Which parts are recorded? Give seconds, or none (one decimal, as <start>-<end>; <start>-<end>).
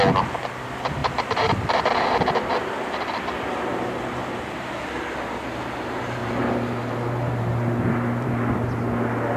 0.0-4.2; 4.8-6.2; 8.3-9.4